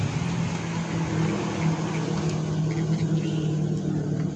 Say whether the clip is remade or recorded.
recorded